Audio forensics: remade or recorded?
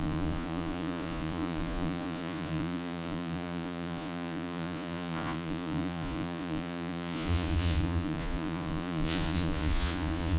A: remade